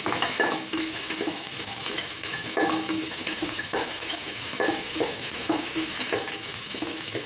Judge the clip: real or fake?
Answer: fake